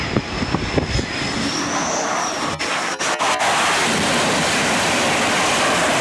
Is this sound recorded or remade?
recorded